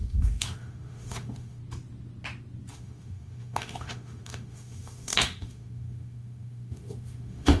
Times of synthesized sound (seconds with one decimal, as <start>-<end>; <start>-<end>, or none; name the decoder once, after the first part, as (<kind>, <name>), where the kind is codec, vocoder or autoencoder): 0.0-1.6 (autoencoder, DAC-VAE); 2.7-7.6